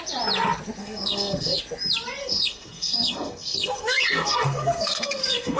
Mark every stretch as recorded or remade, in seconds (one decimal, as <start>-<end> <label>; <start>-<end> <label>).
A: 0.0-0.8 recorded; 0.8-1.6 remade; 1.6-2.2 recorded; 2.2-5.6 remade